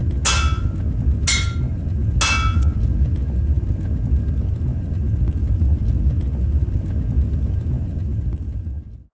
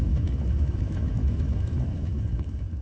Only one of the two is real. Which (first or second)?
first